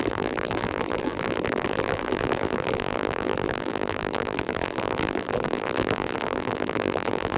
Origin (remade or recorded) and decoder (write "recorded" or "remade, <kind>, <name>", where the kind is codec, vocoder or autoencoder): remade, vocoder, BigVGAN v2